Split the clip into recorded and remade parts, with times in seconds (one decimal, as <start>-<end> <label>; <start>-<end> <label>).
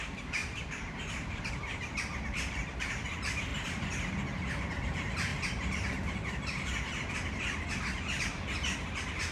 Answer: 0.0-3.5 remade; 3.5-4.5 recorded; 4.5-5.3 remade; 5.3-9.3 recorded